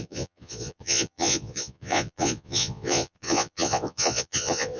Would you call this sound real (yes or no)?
no